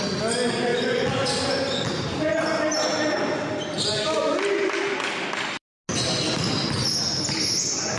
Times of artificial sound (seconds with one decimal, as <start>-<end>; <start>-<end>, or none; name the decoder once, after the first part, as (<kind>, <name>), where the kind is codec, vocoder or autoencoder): none